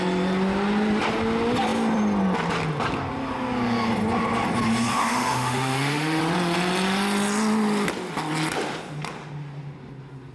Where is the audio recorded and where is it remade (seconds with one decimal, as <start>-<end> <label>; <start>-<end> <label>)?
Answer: 0.0-4.9 recorded; 4.9-6.2 remade; 6.2-10.3 recorded